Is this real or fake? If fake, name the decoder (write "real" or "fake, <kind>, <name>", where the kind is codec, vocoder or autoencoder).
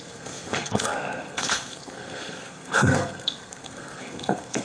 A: fake, codec, SNAC